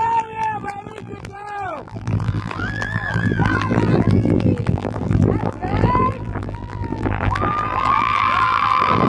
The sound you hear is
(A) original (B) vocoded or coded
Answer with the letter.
B